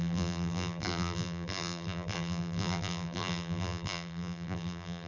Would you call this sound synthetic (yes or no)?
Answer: yes